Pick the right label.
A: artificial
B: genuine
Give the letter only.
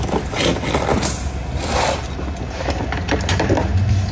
B